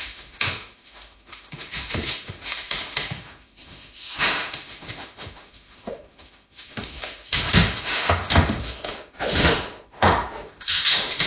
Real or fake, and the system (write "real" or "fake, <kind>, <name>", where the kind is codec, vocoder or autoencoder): fake, autoencoder, DAC-VAE